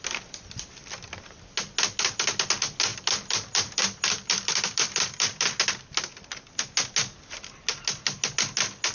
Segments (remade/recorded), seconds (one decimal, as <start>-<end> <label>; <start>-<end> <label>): 0.0-2.9 recorded; 2.9-5.6 remade; 5.6-8.9 recorded